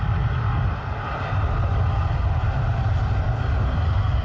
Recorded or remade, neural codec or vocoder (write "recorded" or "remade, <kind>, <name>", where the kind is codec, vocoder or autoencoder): remade, vocoder, BigVGAN v2